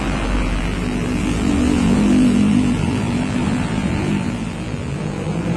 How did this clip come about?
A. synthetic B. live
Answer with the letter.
A